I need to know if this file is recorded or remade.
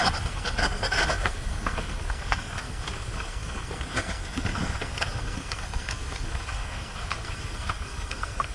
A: remade